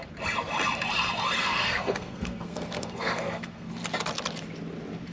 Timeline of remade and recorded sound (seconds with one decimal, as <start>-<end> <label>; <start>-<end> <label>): 0.0-1.4 recorded; 1.4-3.7 remade; 3.7-5.1 recorded

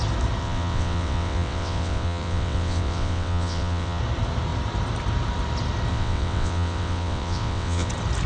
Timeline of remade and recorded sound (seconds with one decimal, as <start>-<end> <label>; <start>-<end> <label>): 0.0-0.4 recorded; 0.4-4.0 remade; 4.0-5.9 recorded; 5.9-7.9 remade; 7.9-8.3 recorded

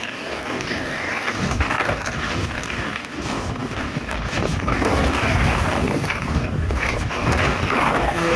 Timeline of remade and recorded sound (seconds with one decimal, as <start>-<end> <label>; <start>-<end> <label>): 0.0-8.4 remade

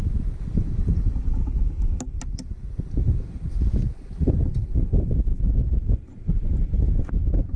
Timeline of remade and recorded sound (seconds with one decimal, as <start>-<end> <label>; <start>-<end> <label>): 0.0-7.6 recorded